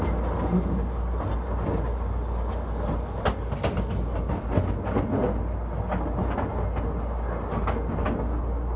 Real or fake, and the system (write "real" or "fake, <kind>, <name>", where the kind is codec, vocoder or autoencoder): real